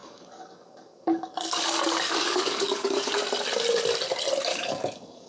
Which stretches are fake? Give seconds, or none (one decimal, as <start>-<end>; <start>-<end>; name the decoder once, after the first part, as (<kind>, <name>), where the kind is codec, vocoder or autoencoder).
0.0-3.2 (codec, DAC); 4.5-5.3